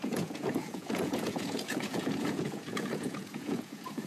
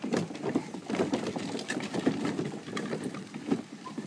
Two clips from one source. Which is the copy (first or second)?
first